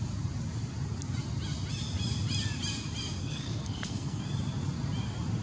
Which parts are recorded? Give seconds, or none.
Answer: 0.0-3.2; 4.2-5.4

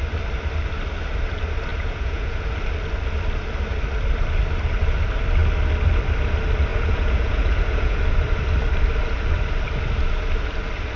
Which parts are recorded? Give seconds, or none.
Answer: 0.0-1.7; 2.5-6.7; 8.0-11.0

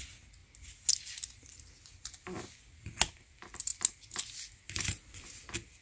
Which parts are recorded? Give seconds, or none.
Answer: 0.0-5.8

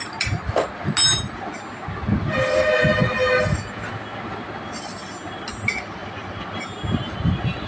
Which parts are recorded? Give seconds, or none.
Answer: 0.0-6.0; 6.6-7.7

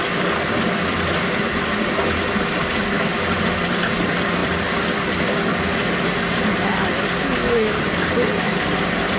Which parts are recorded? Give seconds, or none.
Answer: 0.0-9.2

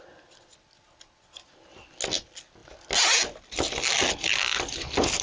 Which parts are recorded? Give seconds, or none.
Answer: 0.0-5.2